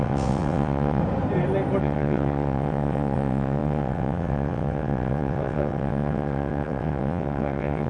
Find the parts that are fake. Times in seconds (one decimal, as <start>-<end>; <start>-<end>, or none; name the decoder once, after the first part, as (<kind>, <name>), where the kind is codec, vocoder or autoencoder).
0.0-1.0 (vocoder, WaveNeXt); 1.8-7.9